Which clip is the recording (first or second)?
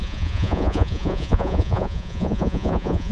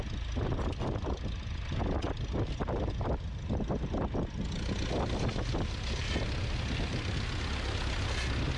second